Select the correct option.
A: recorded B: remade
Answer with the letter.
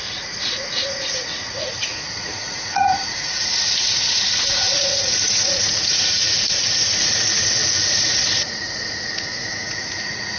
B